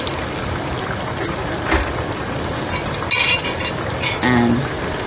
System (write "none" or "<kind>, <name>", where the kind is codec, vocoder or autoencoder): none